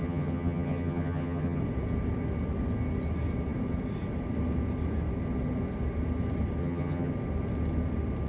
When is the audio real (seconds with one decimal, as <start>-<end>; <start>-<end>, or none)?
1.6-6.6; 7.1-8.3